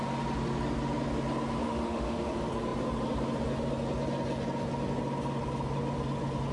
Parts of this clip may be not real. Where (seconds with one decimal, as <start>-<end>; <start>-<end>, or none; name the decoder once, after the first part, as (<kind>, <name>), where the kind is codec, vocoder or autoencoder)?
1.6-2.3 (autoencoder, DAC-VAE)